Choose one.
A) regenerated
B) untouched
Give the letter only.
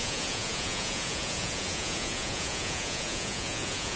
A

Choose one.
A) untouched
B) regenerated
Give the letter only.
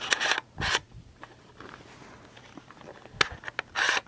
A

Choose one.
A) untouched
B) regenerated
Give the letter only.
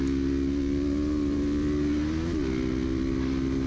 A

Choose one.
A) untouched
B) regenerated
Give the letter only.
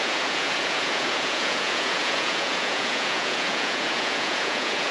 B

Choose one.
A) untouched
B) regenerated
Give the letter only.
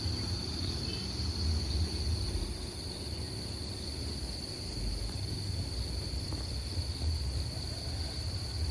A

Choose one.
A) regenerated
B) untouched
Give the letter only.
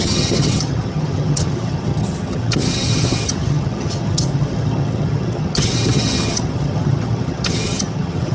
A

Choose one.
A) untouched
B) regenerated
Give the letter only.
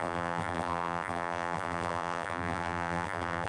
B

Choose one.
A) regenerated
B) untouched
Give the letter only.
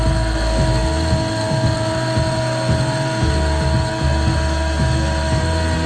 B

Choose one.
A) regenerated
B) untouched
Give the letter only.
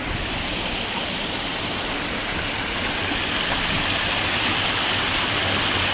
B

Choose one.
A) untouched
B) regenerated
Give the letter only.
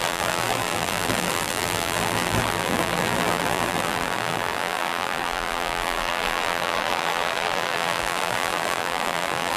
B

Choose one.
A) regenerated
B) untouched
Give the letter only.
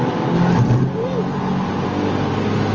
B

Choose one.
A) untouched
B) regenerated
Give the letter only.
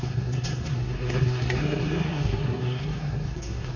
B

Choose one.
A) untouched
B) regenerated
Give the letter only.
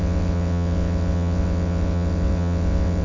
B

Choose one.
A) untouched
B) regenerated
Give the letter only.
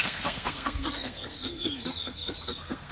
B